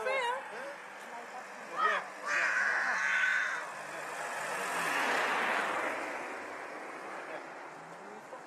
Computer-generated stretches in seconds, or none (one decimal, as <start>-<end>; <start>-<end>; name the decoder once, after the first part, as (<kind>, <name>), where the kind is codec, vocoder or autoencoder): none